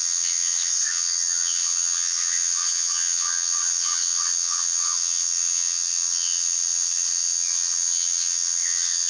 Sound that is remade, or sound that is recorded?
remade